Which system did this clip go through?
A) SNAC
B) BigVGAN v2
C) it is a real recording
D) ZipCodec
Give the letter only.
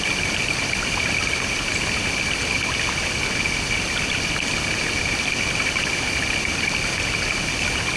B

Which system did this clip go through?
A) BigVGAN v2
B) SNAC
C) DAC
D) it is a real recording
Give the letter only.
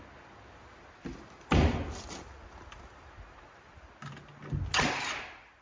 D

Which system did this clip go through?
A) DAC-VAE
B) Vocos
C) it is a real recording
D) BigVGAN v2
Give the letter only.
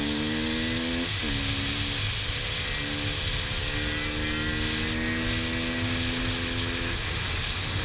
C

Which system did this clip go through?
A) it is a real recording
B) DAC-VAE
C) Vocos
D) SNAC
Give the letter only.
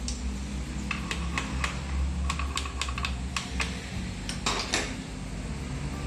A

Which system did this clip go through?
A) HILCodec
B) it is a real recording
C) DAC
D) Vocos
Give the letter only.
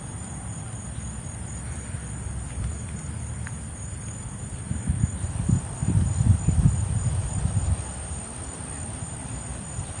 B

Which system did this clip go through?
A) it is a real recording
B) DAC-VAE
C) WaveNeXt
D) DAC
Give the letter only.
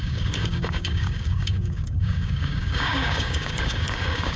D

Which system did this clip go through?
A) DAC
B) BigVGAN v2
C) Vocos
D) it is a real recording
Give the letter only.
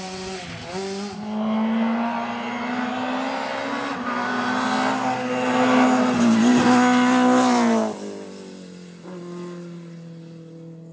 D